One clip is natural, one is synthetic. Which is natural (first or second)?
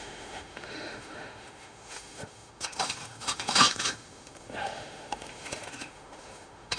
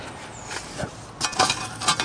second